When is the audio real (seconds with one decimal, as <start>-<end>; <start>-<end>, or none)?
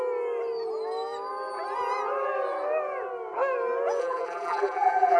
0.0-4.0